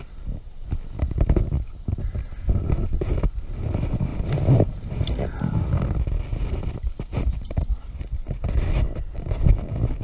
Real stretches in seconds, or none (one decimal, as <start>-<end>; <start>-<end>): 0.0-4.1; 5.8-6.3; 8.1-10.0